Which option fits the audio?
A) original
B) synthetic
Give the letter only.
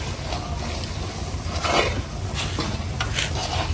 A